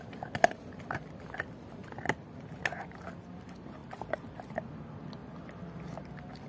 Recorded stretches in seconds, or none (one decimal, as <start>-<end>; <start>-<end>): 0.0-6.5